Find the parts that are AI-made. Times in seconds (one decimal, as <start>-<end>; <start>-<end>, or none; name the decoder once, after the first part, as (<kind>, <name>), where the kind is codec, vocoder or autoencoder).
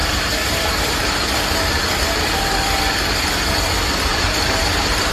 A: 0.0-3.1 (vocoder, BigVGAN v2); 4.1-5.1